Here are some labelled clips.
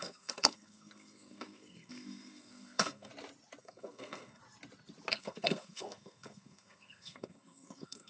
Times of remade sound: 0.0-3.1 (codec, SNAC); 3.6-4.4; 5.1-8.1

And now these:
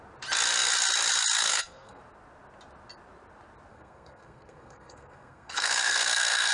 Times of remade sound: 1.5-2.0 (codec, SNAC); 3.7-6.5

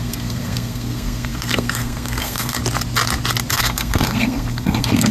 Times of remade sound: 0.0-2.6 (codec, SNAC); 3.5-5.1

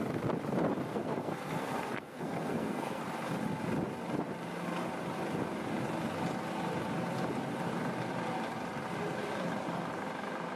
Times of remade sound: 0.9-3.0 (codec, SNAC)

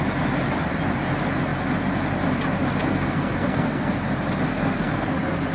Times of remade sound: 2.8-3.9 (codec, SNAC); 4.5-5.1

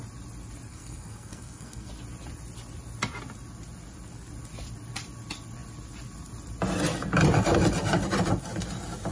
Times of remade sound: 0.7-1.9 (codec, SNAC)

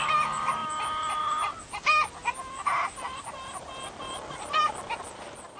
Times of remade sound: none

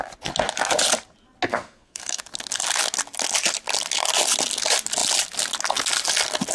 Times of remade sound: 1.5-2.2 (codec, SNAC)